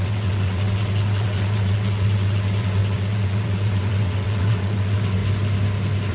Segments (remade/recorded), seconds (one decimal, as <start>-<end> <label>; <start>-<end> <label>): 0.0-5.2 remade; 5.2-6.1 recorded